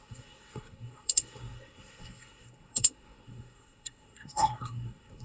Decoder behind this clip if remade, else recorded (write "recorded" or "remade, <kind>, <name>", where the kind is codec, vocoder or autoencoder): remade, codec, SNAC